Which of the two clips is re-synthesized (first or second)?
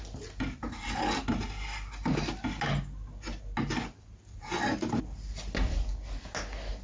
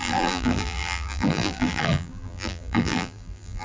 second